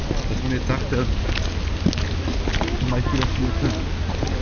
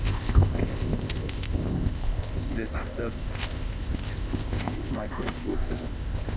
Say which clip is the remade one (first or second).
second